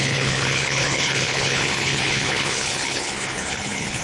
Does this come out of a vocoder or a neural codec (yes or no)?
yes